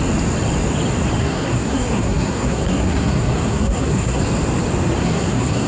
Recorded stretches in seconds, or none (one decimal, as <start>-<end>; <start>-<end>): 0.0-1.2; 4.2-5.0